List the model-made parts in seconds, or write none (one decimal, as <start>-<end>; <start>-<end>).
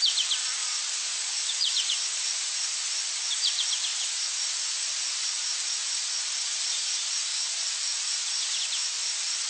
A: 0.6-2.4; 3.9-6.5; 7.3-8.6